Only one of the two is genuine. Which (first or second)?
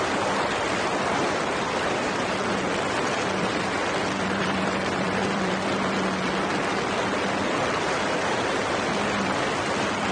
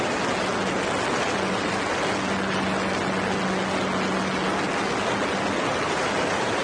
second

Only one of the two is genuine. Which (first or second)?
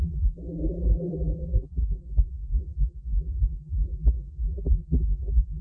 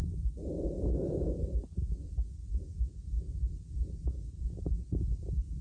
second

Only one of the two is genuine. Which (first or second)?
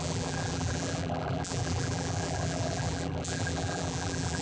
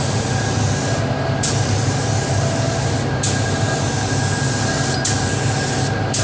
second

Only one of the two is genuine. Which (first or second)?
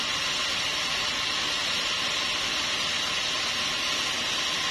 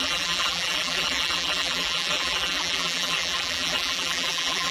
first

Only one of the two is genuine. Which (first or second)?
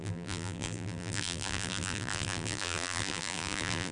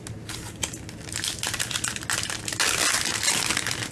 second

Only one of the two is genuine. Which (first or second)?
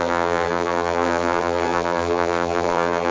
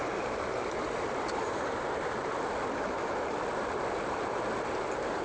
second